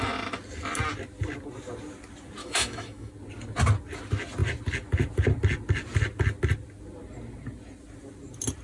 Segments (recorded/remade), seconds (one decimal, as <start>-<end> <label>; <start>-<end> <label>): 0.0-2.4 recorded; 2.4-3.1 remade; 3.1-8.6 recorded